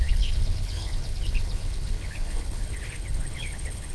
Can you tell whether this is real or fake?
fake